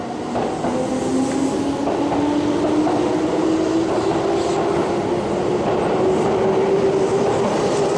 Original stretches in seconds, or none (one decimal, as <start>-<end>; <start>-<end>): 0.0-8.0